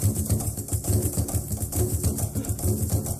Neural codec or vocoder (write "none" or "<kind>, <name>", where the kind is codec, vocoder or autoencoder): none